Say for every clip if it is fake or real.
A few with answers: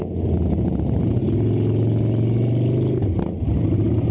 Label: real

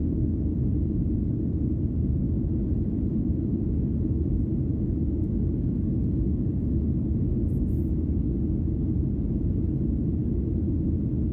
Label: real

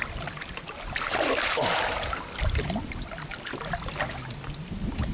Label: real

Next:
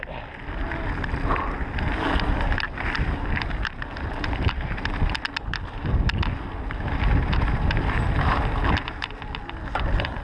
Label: real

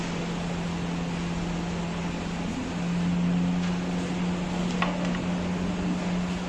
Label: real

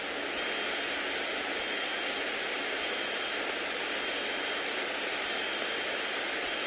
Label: real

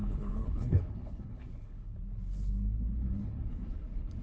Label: fake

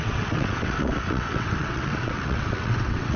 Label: fake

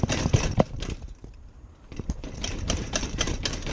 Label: fake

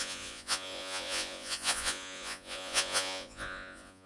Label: fake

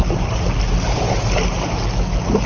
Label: real